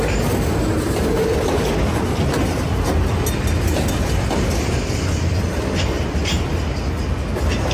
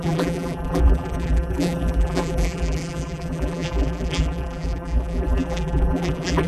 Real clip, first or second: first